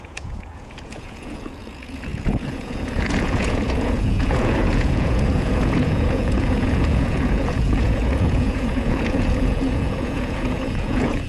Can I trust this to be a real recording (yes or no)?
no